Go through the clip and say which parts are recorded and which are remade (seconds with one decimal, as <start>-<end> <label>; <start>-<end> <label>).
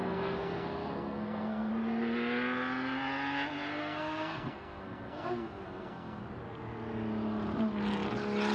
0.0-1.7 remade; 1.7-3.8 recorded; 3.8-6.2 remade; 6.2-8.5 recorded